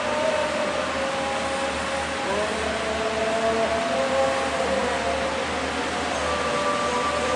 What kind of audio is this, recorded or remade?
recorded